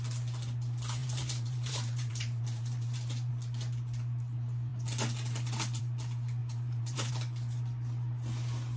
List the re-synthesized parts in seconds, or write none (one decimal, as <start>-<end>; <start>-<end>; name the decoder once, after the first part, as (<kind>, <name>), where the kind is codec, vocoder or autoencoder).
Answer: 1.0-3.3 (vocoder, BigVGAN v2); 6.4-7.1